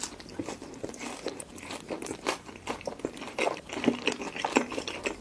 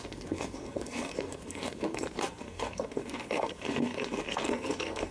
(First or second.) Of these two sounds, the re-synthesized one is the second